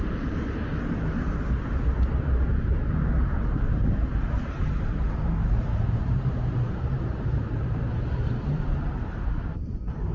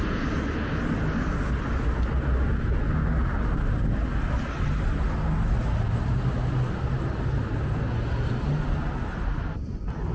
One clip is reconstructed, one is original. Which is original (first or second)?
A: second